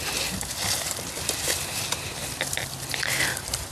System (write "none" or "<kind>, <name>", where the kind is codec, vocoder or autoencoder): none